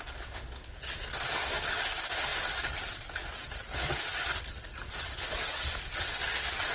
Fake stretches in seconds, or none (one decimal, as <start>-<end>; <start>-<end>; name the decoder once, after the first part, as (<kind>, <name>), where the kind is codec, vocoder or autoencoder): 2.3-4.8 (vocoder, BigVGAN v2)